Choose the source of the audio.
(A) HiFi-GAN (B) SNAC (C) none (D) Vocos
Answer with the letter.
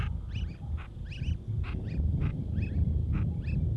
C